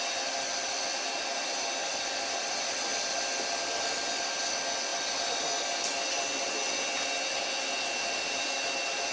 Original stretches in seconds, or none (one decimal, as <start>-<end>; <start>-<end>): 0.0-9.1